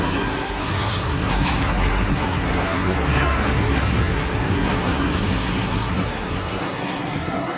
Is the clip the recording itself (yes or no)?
no